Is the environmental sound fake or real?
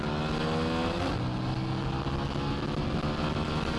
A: real